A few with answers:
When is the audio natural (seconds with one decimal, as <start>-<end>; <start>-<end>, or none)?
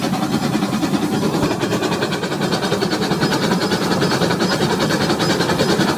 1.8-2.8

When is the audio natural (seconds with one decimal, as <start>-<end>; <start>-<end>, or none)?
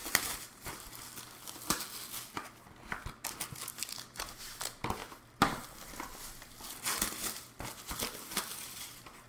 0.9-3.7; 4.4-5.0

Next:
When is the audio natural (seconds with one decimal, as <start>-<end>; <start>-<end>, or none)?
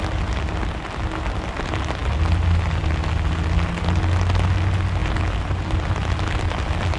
0.0-7.0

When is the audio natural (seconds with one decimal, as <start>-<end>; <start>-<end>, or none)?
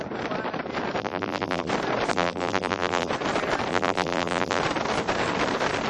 0.0-1.0; 1.7-2.1; 3.1-3.7; 4.6-5.9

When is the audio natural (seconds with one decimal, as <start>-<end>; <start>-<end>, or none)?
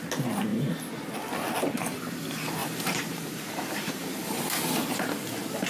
0.0-2.6; 4.4-5.7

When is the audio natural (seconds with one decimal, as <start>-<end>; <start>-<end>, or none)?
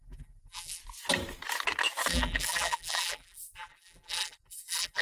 0.8-2.1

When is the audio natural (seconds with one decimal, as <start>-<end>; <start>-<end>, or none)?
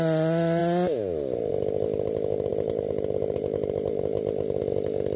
0.0-2.5; 4.6-5.2